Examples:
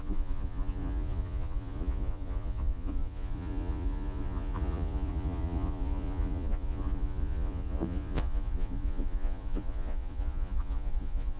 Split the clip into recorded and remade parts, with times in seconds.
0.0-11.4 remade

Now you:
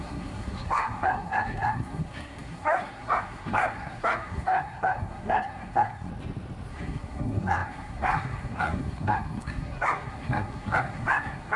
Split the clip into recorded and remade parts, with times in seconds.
0.0-6.1 remade; 6.1-6.7 recorded; 6.7-11.6 remade

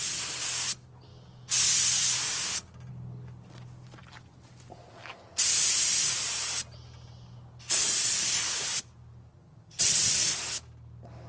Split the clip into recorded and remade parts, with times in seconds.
0.0-9.3 recorded; 9.3-10.1 remade; 10.1-11.3 recorded

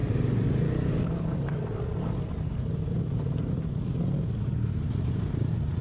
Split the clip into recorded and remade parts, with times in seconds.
0.0-5.8 recorded

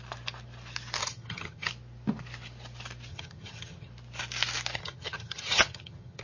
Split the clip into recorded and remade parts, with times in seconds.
0.0-1.0 recorded; 1.0-1.7 remade; 1.7-3.1 recorded; 3.1-3.9 remade; 3.9-4.8 recorded; 4.8-6.2 remade

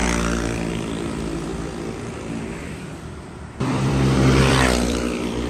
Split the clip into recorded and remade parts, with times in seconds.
0.0-0.7 recorded; 0.7-5.5 remade

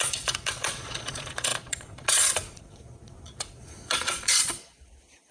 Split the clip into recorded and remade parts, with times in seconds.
0.0-5.3 remade